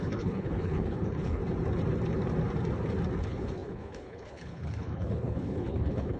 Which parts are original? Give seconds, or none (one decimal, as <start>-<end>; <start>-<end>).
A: 1.4-3.2